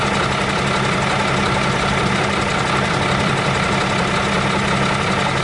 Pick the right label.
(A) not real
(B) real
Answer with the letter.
B